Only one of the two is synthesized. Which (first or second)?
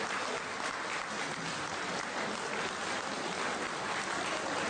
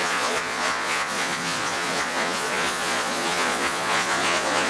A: second